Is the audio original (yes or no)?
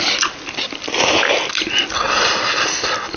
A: yes